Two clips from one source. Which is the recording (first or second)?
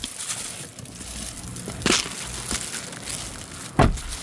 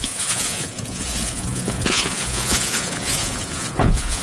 first